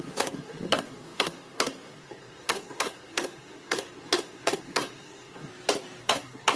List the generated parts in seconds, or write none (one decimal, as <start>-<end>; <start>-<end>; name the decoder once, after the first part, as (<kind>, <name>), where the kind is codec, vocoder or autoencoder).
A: 0.0-5.5 (codec, SNAC); 6.0-6.6